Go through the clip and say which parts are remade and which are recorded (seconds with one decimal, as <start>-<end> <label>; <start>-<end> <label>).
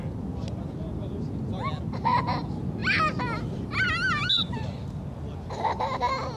0.0-6.4 recorded